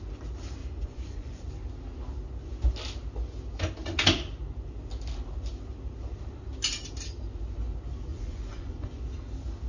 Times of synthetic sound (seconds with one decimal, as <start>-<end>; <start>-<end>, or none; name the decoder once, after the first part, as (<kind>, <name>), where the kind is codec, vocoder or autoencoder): 0.6-1.5 (vocoder, Vocos); 8.1-9.0